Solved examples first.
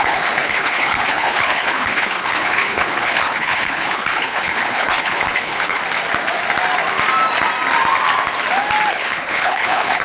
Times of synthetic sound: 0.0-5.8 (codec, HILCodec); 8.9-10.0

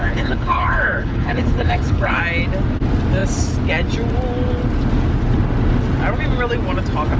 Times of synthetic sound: 0.0-2.2 (codec, HILCodec)

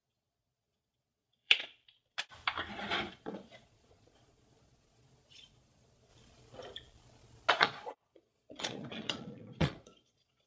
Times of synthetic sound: 0.0-1.7 (vocoder, Vocos); 3.1-6.1; 7.5-10.5

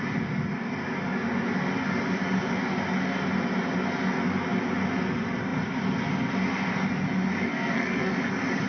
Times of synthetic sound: 7.5-8.1 (codec, SNAC)

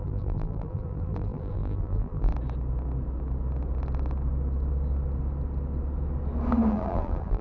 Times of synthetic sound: 0.0-2.3 (vocoder, BigVGAN v2); 6.7-7.4

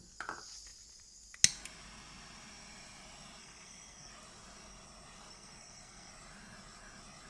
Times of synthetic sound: 3.4-4.1 (codec, SNAC); 5.3-6.1